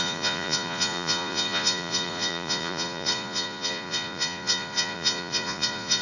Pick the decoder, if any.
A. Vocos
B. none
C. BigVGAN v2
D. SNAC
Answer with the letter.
A